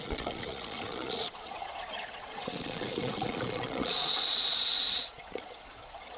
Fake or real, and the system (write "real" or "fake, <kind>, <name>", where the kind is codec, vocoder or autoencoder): fake, vocoder, Vocos